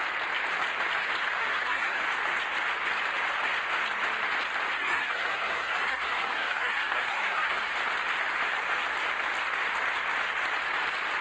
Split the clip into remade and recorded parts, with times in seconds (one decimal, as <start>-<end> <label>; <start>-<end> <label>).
0.0-1.4 recorded; 1.4-2.0 remade; 2.0-4.8 recorded; 4.8-7.7 remade; 7.7-11.2 recorded